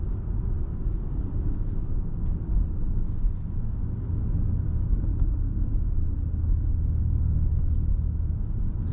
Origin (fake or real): real